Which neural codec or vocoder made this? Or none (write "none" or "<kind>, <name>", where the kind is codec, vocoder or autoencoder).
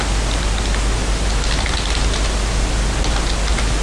none